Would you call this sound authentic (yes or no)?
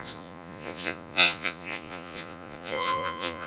no